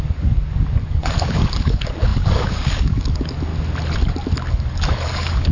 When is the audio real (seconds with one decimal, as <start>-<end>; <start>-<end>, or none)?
3.5-4.5